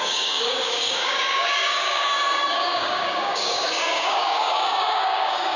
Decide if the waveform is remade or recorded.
remade